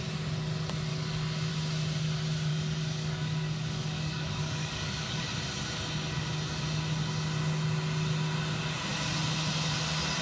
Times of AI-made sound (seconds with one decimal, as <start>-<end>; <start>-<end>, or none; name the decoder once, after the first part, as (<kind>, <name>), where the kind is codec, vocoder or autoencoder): 0.9-1.5 (codec, DAC); 2.5-5.2